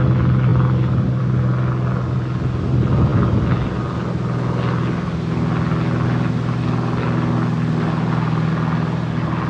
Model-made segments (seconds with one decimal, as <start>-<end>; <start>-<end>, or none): none